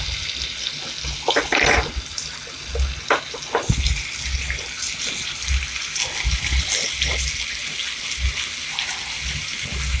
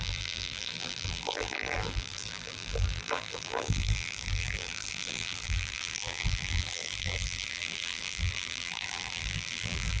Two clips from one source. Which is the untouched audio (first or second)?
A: first